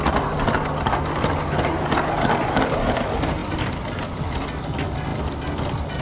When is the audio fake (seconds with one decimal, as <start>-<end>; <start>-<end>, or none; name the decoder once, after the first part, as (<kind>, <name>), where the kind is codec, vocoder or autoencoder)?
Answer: none